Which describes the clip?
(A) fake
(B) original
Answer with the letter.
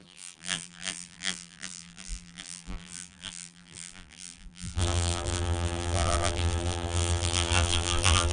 A